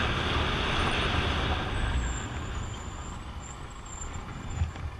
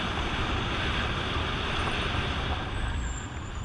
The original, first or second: first